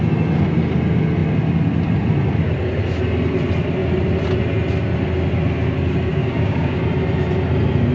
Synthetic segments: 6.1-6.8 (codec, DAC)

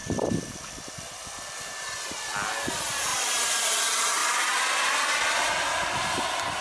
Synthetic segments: 3.1-3.8 (vocoder, BigVGAN v2); 4.2-5.5

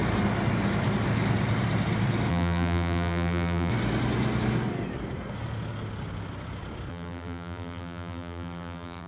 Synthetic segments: 2.3-3.7 (vocoder, BigVGAN v2); 6.9-9.1

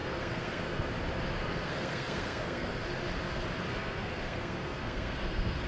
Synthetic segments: 0.0-0.9 (codec, SNAC); 1.4-2.8; 3.7-5.7

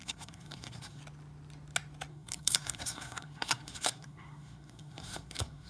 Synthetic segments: 0.0-1.0 (codec, SNAC); 2.1-5.7

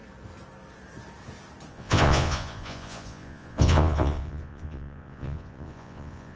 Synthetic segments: 1.7-6.4 (vocoder, Vocos)

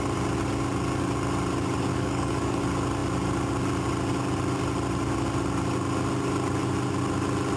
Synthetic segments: 1.9-2.6 (codec, DAC)

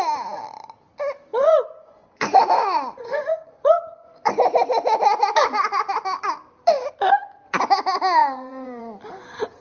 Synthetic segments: 1.3-4.3 (vocoder, Vocos); 8.2-8.8